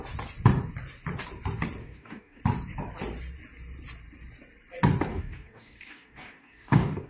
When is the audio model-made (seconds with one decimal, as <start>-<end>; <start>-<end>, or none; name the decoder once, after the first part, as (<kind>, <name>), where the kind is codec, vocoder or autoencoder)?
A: 1.8-2.4 (codec, DAC); 5.1-7.1